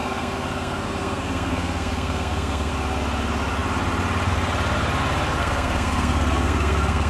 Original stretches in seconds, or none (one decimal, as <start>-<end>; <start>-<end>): 2.7-5.4